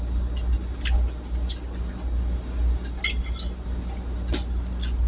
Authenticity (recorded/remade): recorded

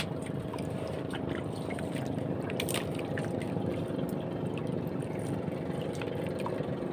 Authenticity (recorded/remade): recorded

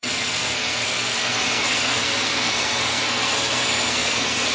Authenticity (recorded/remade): remade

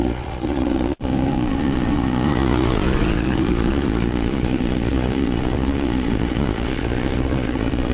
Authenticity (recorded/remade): remade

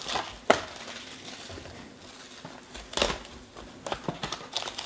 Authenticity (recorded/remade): recorded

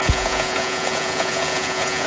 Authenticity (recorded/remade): remade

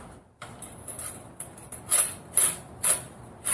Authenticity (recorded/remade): recorded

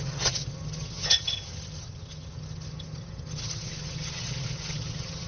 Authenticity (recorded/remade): remade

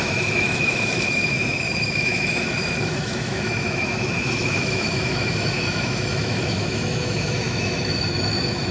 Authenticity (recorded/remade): remade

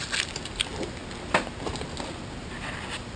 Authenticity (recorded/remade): recorded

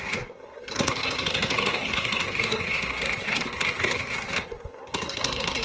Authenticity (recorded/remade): remade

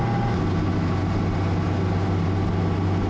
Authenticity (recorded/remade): recorded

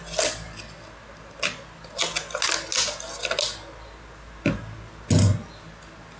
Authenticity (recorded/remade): recorded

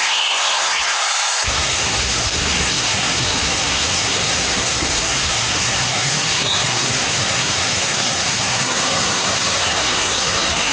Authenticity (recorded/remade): remade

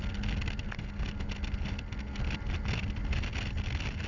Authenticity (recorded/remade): recorded